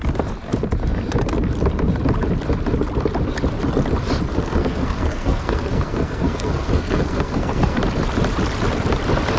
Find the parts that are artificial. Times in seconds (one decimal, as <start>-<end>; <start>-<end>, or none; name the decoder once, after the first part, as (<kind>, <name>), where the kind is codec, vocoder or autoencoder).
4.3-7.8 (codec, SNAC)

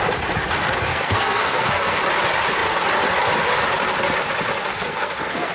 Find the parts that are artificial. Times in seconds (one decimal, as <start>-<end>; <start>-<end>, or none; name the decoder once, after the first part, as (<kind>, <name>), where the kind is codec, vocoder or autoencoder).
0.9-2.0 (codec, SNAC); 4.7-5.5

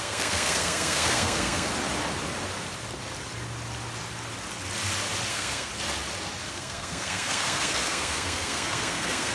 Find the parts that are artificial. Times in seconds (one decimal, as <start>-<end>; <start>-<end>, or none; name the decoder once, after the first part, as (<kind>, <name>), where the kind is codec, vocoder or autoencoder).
0.0-1.7 (codec, SNAC); 5.3-5.7; 6.5-9.3